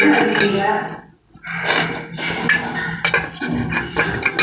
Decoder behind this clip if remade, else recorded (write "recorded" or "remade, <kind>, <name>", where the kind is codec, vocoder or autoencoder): recorded